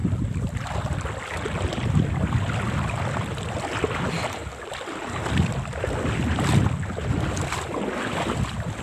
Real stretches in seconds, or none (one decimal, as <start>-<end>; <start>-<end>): 0.0-8.8